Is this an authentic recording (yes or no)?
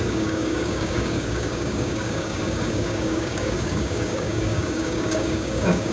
no